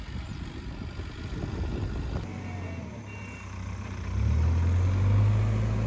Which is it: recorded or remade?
recorded